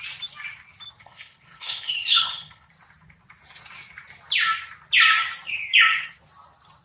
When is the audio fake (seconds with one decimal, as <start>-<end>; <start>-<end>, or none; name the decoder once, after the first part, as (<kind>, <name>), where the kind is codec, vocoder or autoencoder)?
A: 1.0-2.7 (codec, HILCodec)